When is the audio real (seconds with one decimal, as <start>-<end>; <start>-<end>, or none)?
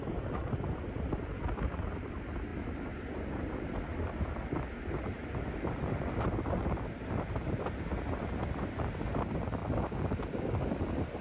0.0-11.2